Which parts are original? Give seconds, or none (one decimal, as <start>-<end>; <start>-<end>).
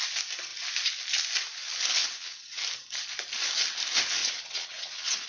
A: 0.0-2.0; 2.6-4.2